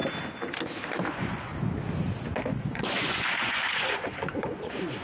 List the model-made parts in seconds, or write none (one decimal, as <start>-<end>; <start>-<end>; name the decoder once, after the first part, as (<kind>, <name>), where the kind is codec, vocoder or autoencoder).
1.1-1.5 (vocoder, Vocos); 2.6-5.0